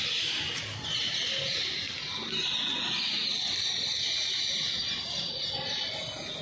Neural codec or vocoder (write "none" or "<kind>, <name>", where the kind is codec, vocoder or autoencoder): none